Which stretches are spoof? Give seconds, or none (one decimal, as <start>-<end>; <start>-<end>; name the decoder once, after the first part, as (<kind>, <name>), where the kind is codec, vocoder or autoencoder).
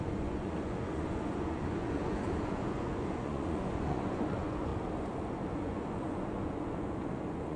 0.0-4.7 (vocoder, Vocos); 5.5-7.6